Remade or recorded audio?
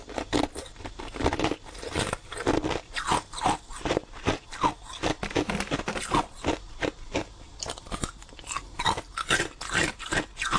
recorded